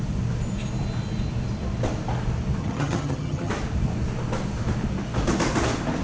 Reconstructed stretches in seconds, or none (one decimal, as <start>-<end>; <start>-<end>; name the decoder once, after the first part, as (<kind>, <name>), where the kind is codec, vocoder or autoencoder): 2.6-3.5 (vocoder, HiFi-GAN)